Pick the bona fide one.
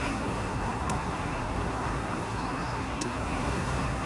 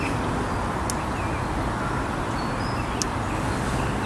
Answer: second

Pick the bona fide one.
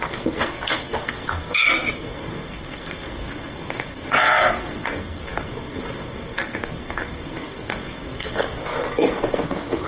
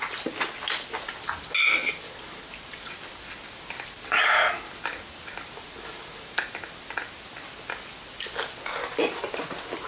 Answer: second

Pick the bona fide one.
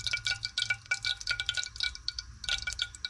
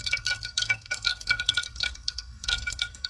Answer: first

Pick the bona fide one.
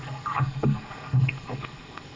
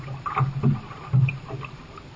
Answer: second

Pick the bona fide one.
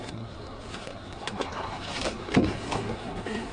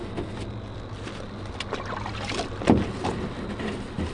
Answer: second